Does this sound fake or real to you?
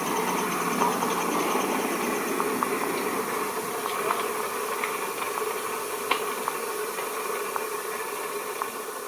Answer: real